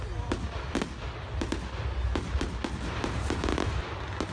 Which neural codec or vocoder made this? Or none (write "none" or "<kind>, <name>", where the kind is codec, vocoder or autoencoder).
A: none